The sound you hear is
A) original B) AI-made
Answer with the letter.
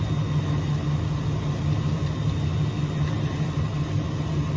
A